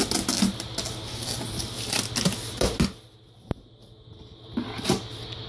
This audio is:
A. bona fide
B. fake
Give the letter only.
A